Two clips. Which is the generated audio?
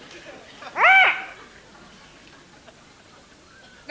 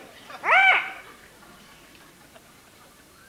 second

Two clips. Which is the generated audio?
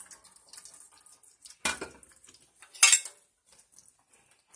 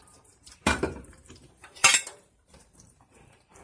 second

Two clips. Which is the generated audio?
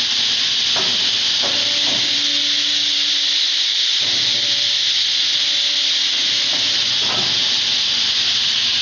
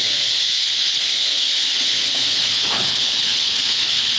second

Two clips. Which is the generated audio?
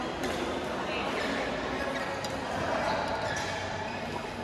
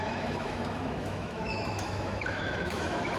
second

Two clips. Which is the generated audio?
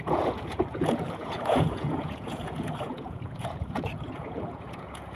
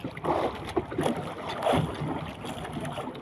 first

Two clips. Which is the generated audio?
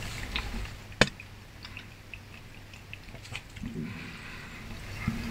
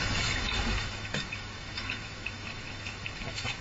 second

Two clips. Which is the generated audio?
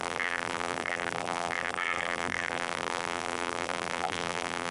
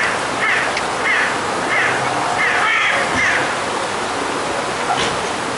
first